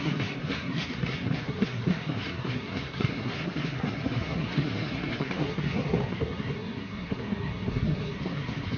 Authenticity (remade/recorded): remade